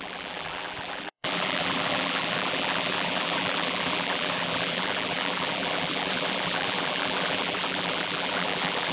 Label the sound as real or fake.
fake